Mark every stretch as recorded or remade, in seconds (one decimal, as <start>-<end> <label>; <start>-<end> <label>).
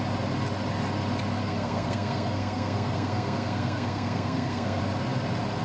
0.0-1.4 recorded; 1.4-4.8 remade; 4.8-5.6 recorded